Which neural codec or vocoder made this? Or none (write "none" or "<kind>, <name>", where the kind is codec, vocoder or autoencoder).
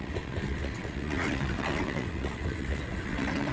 vocoder, WaveNeXt